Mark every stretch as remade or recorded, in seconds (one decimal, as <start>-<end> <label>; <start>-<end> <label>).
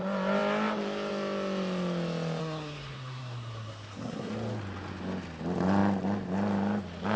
0.0-2.4 recorded; 2.4-4.3 remade; 4.3-7.2 recorded